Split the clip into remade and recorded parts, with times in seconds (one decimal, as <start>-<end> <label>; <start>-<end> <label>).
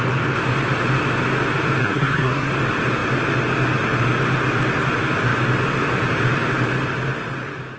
0.0-1.8 recorded; 1.8-2.5 remade; 2.5-7.8 recorded